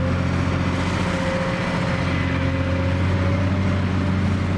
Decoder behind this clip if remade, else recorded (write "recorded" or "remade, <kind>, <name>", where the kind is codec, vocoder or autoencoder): recorded